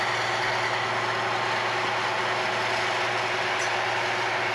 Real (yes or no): yes